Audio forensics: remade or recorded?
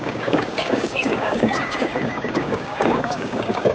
remade